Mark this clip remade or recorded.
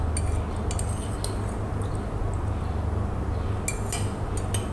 recorded